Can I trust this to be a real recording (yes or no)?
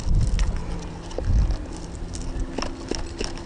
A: yes